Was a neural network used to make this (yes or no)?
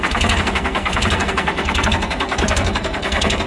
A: yes